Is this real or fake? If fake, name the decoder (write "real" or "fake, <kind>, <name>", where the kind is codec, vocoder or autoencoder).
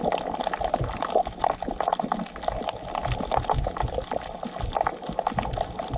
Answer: real